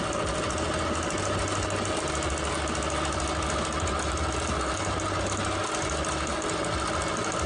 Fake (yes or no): no